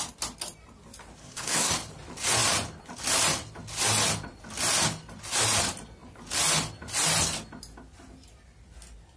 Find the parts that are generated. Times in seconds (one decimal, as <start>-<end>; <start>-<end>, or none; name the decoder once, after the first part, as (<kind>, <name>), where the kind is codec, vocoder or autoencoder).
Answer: 1.2-1.7 (codec, SNAC)